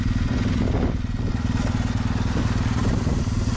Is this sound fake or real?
real